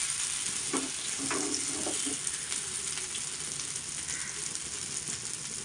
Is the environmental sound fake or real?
real